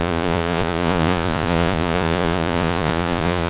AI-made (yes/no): yes